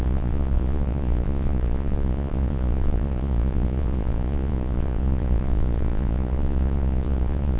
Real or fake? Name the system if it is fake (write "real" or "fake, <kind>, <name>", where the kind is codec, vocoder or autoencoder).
fake, vocoder, Vocos